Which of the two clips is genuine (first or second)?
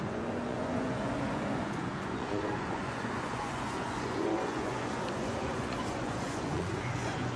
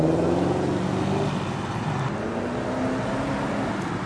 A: second